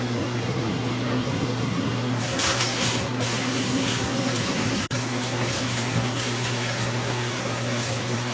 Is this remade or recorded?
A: remade